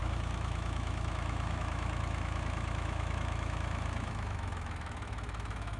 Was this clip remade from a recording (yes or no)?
yes